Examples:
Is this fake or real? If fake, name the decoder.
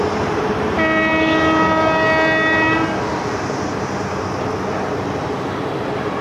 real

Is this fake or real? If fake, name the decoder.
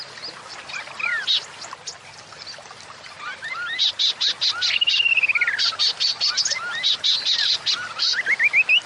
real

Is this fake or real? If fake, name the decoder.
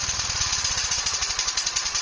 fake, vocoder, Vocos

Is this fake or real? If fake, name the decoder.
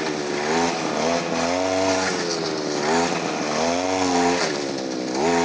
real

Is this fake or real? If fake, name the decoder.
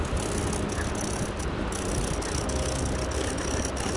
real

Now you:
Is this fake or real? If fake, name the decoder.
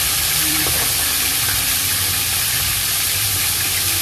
fake, vocoder, BigVGAN v2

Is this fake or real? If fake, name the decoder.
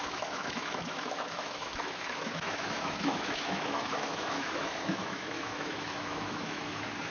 fake, autoencoder, DAC-VAE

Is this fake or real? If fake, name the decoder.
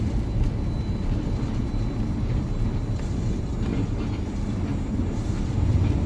real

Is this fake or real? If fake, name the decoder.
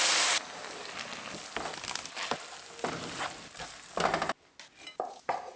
real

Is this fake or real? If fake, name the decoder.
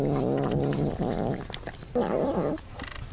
real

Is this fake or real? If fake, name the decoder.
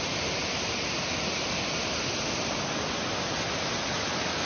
real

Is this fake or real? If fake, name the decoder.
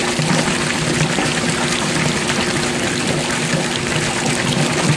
real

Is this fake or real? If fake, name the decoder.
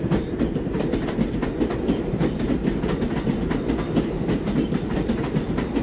real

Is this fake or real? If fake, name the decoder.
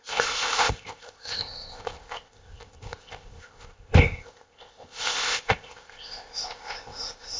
fake, codec, ZipCodec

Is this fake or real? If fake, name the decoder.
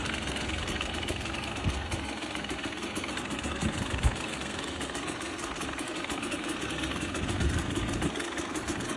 fake, codec, SNAC